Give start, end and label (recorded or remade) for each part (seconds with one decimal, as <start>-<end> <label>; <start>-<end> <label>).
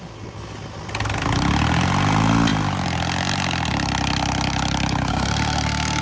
0.0-5.1 recorded; 5.1-6.0 remade